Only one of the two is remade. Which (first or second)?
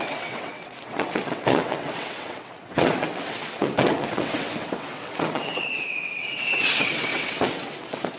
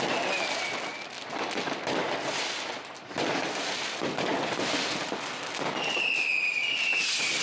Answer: first